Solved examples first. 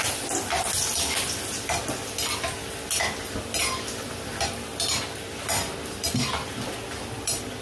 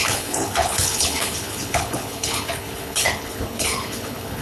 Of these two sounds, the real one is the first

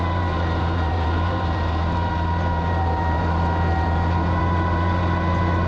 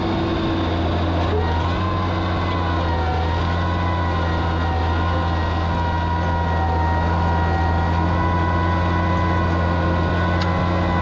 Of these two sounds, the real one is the second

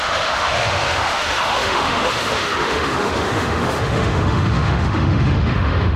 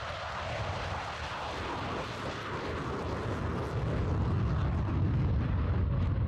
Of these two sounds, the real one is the second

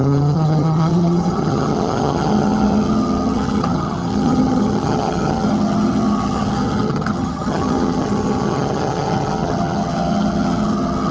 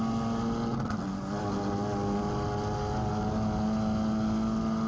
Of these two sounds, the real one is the second